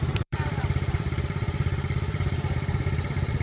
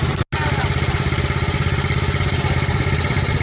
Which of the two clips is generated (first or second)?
first